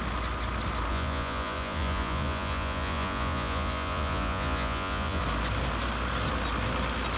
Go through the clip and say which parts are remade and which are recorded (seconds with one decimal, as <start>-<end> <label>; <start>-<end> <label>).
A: 0.0-0.9 recorded; 0.9-5.2 remade; 5.2-7.2 recorded